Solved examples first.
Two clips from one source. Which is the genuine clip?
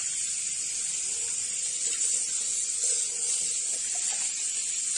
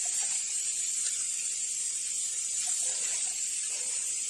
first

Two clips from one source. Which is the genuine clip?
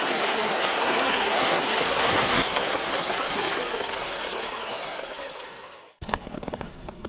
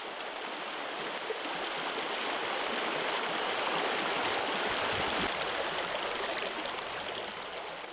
second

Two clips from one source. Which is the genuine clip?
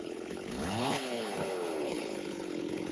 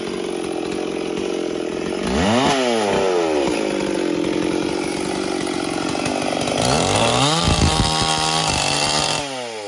second